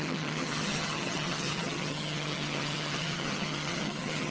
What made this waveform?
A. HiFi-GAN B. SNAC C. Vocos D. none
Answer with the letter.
A